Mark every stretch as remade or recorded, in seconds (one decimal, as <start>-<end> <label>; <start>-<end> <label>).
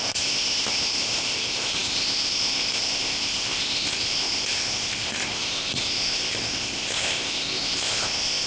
0.0-8.5 remade